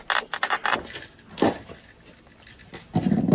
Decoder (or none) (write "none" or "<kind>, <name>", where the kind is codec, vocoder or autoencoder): none